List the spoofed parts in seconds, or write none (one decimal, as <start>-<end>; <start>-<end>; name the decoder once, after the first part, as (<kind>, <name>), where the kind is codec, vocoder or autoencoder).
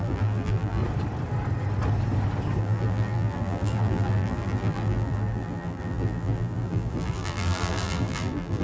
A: 0.0-0.8 (vocoder, BigVGAN v2); 2.6-8.6